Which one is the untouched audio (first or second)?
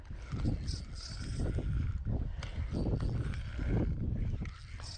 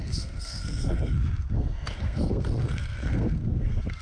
first